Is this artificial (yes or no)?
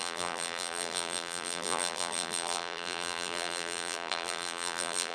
yes